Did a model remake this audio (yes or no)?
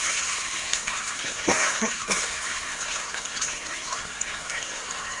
yes